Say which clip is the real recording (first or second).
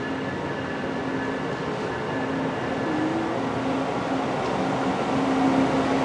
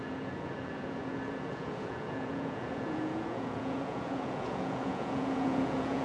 first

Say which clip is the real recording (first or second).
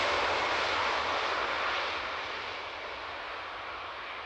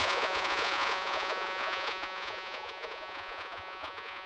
first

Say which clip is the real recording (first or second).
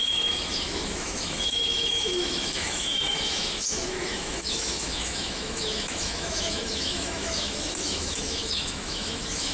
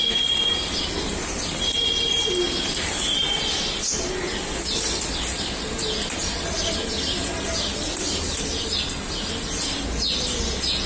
second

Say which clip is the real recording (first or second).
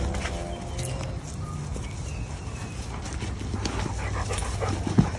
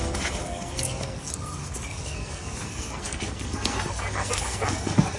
first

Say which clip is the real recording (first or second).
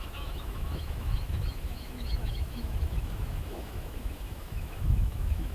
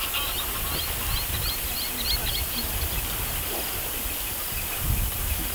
second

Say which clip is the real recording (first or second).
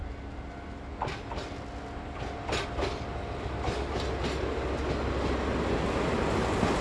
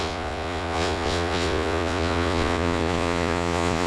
first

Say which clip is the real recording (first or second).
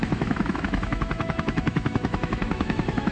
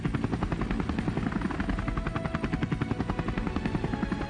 second